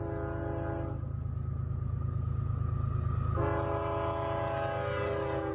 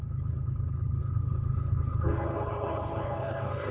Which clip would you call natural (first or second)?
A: first